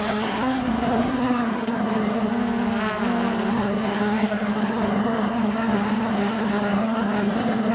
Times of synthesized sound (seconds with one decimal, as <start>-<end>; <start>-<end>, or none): 0.0-2.3; 3.5-7.7

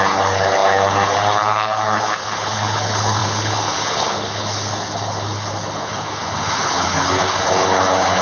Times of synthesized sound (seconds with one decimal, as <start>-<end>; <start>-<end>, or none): 0.0-8.2

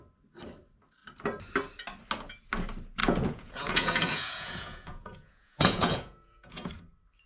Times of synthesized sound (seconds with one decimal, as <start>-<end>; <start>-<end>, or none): 3.0-6.7

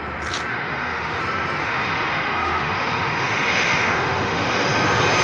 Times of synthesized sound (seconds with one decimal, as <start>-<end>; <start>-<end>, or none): 0.5-1.2; 1.6-4.7